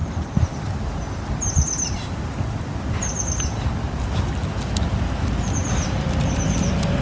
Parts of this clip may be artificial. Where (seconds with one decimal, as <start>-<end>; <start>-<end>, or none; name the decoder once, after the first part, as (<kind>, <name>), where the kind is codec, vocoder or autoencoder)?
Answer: 0.0-4.2 (vocoder, BigVGAN v2); 5.6-7.0

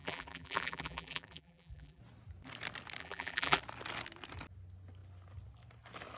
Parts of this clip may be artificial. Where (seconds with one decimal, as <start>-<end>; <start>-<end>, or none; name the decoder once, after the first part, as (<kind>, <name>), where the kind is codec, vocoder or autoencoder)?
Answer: 0.0-2.0 (vocoder, BigVGAN v2); 3.0-3.6

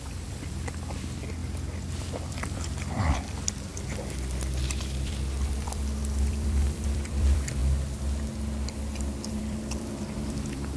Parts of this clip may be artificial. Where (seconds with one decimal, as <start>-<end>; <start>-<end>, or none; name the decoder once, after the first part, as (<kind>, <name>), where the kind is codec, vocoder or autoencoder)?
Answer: 0.0-3.7 (vocoder, BigVGAN v2); 4.6-7.6; 9.3-10.8

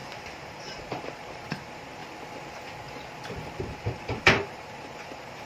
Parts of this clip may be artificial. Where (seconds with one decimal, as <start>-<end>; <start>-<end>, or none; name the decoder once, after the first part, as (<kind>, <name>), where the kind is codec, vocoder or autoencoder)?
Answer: 0.0-2.0 (vocoder, BigVGAN v2); 3.6-5.5

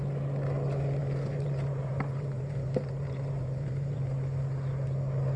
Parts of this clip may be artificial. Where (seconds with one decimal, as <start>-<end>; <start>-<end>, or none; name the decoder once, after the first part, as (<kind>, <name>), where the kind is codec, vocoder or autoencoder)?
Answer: 1.0-4.2 (vocoder, BigVGAN v2)

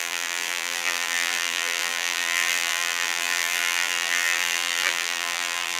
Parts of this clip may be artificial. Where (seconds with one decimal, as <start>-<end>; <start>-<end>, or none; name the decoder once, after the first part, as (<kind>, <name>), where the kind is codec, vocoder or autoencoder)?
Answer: 0.0-5.8 (vocoder, BigVGAN v2)

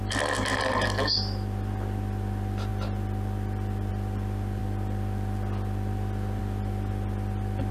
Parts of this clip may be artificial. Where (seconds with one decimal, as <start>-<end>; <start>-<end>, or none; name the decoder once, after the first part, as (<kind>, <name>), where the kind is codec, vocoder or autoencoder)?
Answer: none

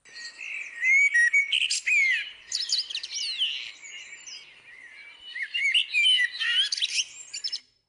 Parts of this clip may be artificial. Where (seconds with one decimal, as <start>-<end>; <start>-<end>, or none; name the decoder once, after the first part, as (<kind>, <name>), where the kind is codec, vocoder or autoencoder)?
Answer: 5.0-5.6 (vocoder, BigVGAN v2)